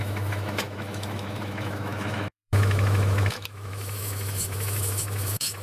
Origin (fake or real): fake